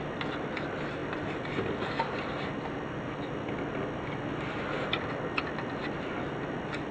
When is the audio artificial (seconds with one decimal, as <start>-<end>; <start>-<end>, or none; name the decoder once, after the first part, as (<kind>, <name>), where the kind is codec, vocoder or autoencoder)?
none